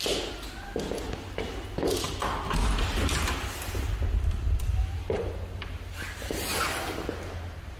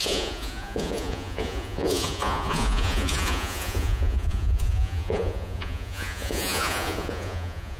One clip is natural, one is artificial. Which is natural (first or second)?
first